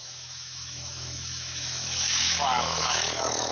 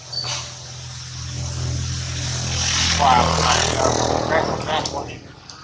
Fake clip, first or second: first